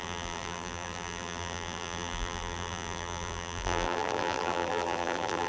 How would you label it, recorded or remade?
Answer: remade